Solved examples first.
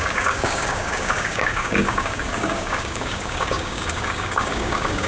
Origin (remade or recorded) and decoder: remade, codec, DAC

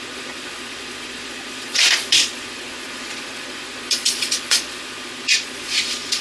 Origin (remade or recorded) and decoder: remade, vocoder, Vocos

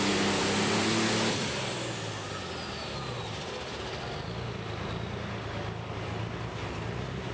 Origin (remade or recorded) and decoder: recorded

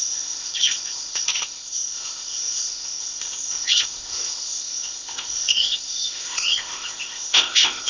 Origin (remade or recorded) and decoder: remade, codec, ZipCodec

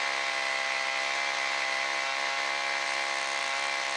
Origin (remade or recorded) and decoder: recorded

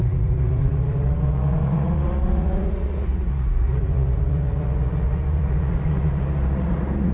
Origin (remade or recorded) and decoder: remade, vocoder, Vocos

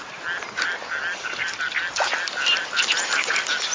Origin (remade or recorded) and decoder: recorded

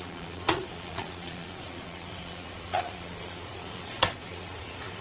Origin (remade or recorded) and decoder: remade, vocoder, Vocos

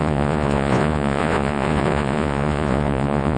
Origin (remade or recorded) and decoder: remade, vocoder, Vocos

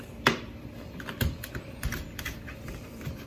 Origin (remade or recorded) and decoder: remade, vocoder, BigVGAN v2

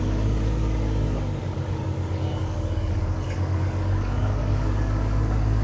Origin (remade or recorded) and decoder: remade, codec, DAC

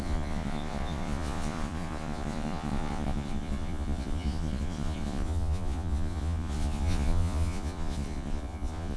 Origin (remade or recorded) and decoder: remade, vocoder, Vocos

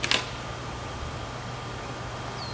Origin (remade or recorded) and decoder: recorded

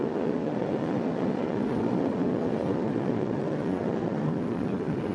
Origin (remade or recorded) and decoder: remade, vocoder, Vocos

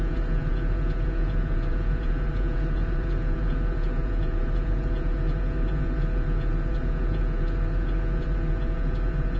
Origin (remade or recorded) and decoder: remade, vocoder, Vocos